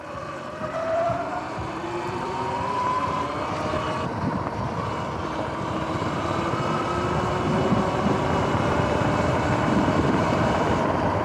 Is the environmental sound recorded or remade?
remade